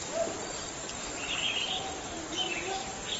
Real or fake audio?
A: real